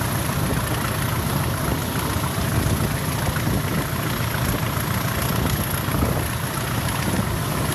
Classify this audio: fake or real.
real